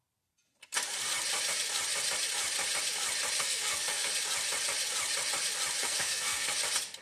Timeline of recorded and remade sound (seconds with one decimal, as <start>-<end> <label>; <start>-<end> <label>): 0.0-3.4 recorded; 3.4-4.1 remade; 4.1-5.8 recorded; 5.8-6.5 remade; 6.5-7.0 recorded